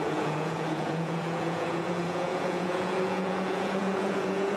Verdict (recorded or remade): remade